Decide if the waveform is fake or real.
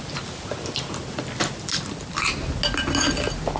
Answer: real